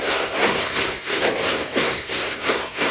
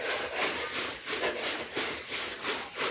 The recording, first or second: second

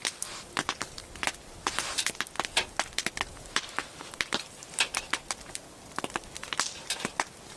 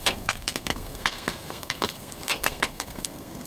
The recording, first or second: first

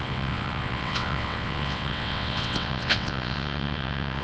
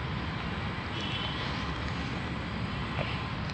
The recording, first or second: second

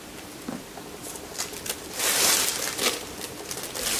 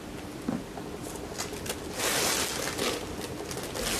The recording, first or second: second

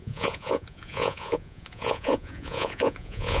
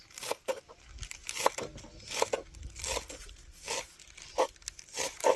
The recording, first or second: second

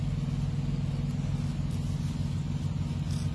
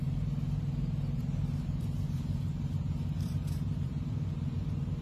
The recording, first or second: first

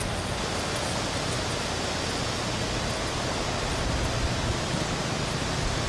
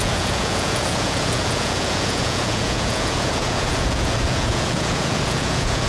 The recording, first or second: first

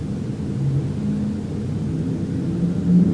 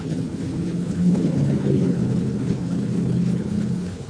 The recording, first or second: first